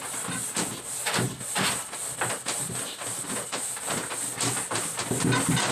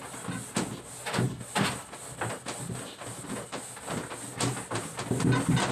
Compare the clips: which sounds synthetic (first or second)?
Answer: first